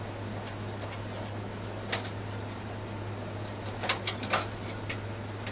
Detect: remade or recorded recorded